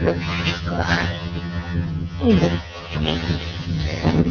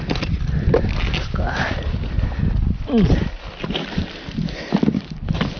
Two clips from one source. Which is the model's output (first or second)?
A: first